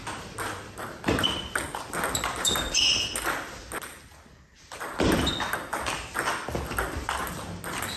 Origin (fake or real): real